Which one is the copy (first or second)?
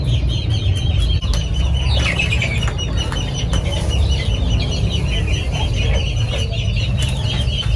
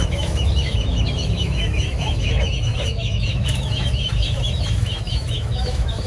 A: second